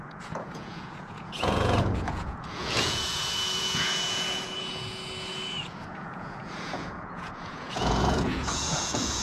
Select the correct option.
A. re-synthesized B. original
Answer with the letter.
A